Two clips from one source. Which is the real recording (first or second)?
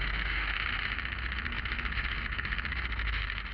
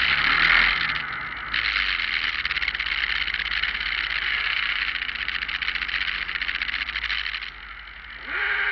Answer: second